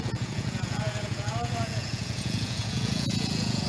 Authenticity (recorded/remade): remade